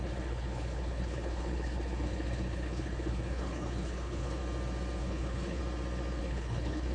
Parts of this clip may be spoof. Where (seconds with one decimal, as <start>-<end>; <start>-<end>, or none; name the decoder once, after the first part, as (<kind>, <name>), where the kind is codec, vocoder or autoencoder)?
0.0-4.4 (codec, HILCodec); 5.0-5.6; 6.2-6.9